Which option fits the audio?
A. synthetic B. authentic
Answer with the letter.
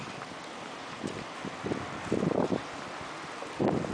B